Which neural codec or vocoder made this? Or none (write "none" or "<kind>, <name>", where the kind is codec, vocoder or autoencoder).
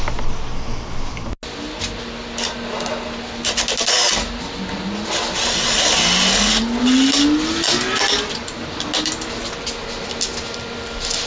none